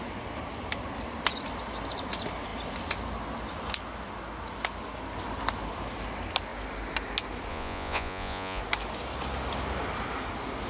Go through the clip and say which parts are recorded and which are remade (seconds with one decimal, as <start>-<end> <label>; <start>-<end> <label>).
0.0-7.5 recorded; 7.5-8.6 remade; 8.6-10.7 recorded